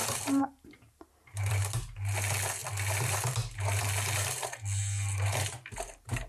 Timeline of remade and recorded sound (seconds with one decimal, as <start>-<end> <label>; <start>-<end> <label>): 0.0-1.6 remade; 1.6-6.3 recorded